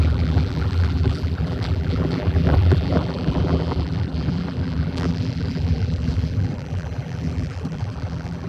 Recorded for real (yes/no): no